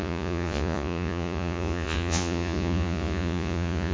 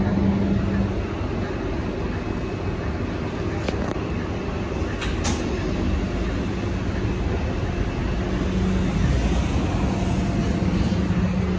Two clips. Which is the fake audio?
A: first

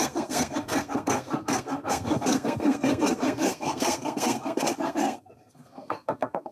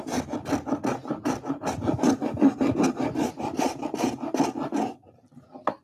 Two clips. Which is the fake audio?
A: first